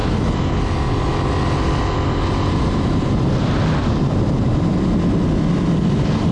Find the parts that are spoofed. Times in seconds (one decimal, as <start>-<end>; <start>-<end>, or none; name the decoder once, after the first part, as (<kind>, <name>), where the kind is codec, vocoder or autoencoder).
none